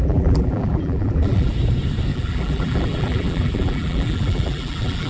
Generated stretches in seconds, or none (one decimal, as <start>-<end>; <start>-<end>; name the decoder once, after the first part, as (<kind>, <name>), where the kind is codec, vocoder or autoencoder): 0.0-1.5 (vocoder, BigVGAN v2); 2.1-5.1